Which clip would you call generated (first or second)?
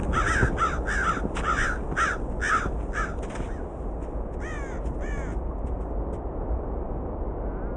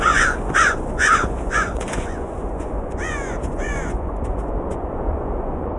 second